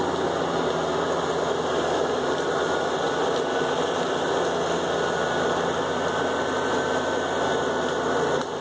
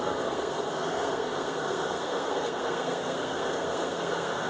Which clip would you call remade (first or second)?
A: second